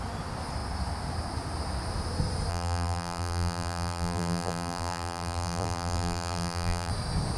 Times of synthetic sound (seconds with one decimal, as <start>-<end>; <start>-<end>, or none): 2.5-6.9